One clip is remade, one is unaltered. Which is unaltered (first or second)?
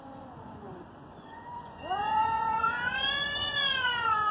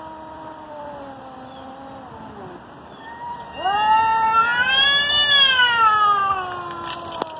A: second